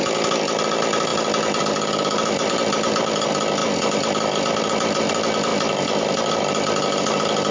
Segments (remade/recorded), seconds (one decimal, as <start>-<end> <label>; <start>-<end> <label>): 0.0-7.5 recorded